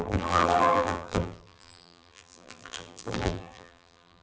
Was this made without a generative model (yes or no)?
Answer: no